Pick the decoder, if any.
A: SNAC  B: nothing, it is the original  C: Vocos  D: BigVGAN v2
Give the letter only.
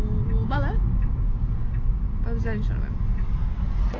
B